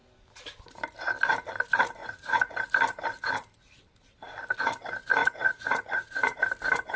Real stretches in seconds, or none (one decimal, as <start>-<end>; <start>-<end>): 0.0-2.0; 2.7-5.2; 6.4-7.0